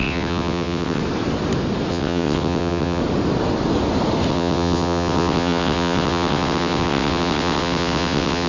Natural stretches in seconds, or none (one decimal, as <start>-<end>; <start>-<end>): 1.0-1.9; 3.0-4.3